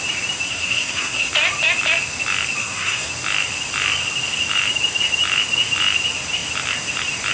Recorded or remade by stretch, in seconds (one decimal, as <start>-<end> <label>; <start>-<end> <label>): 0.0-0.5 recorded; 0.5-1.3 remade; 1.3-2.6 recorded; 2.6-3.1 remade; 3.1-7.3 recorded